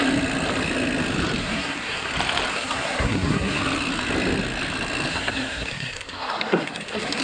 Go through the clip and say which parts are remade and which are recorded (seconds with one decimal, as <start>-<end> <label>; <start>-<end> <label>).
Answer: 0.0-1.4 recorded; 1.4-2.1 remade; 2.1-2.5 recorded; 2.5-3.6 remade; 3.6-5.1 recorded; 5.1-7.2 remade